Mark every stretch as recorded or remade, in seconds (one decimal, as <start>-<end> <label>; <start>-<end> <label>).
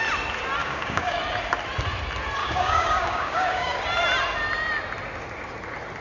0.0-0.6 recorded; 0.6-1.2 remade; 1.2-2.4 recorded; 2.4-3.8 remade; 3.8-6.0 recorded